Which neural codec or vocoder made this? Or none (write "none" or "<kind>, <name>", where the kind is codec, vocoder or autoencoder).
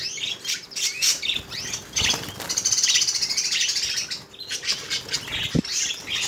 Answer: none